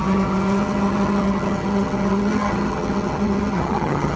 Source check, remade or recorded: remade